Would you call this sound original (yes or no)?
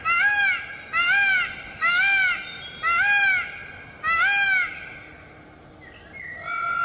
yes